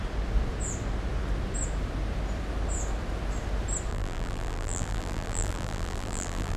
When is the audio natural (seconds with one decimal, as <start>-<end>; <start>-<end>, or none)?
0.0-3.9